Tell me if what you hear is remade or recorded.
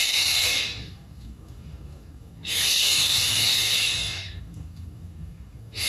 remade